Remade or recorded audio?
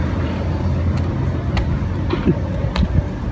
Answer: recorded